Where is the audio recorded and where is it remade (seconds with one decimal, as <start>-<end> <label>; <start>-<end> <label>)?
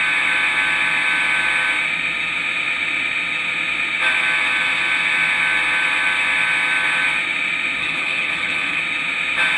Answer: 0.0-7.8 recorded; 7.8-8.8 remade; 8.8-9.6 recorded